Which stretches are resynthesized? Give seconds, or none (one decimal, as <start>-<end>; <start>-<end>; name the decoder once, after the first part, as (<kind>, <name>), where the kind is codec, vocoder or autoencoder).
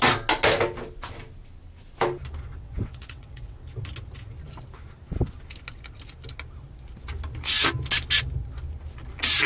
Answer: 2.5-3.6 (vocoder, WaveNeXt)